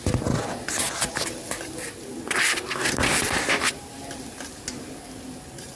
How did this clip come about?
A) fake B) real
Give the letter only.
B